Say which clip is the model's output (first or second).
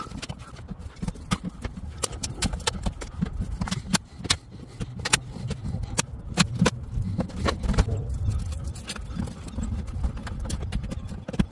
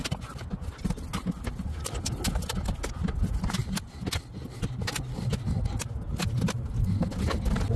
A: first